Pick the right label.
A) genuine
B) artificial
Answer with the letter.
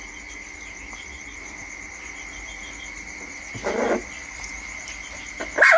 A